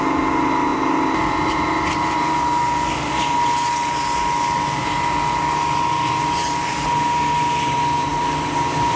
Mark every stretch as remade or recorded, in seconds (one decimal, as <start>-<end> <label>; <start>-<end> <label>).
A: 0.0-0.7 recorded; 0.7-1.6 remade; 1.6-8.1 recorded; 8.1-9.0 remade